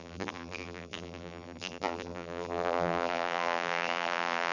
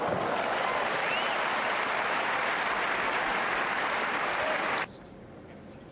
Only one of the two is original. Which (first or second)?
second